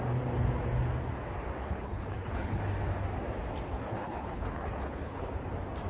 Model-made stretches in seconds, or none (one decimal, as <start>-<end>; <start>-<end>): 1.6-2.6; 3.8-5.3